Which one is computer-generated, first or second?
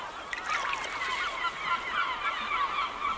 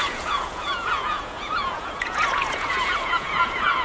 second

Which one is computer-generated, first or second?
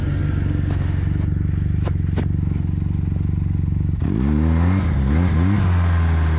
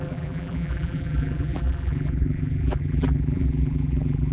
second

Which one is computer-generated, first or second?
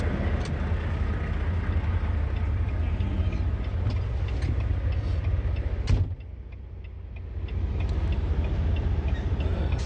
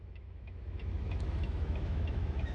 second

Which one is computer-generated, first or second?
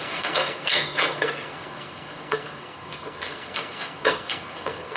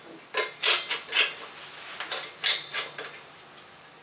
first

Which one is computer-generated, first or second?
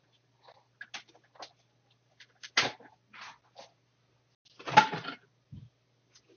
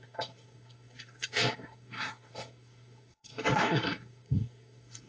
second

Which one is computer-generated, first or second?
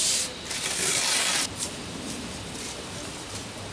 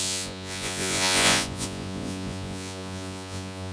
second